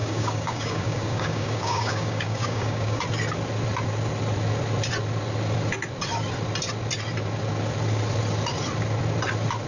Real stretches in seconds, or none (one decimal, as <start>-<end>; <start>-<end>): 3.0-9.7